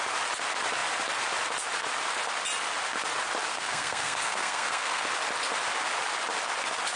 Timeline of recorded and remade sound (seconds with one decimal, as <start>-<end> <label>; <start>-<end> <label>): 0.0-3.5 recorded; 3.5-5.1 remade; 5.1-7.0 recorded